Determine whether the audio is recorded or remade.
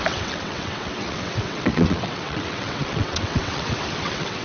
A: remade